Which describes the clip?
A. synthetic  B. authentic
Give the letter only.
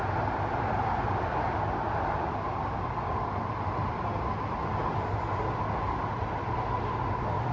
B